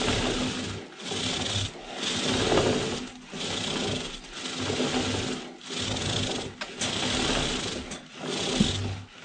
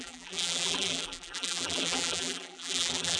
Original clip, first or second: first